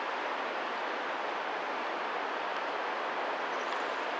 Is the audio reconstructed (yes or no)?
no